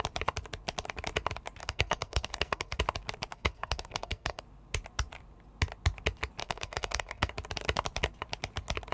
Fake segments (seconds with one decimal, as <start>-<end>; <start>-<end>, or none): 1.6-2.8; 3.3-4.4; 6.4-7.3